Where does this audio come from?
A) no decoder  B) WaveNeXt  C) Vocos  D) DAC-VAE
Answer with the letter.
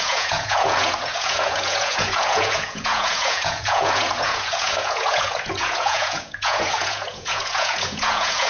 C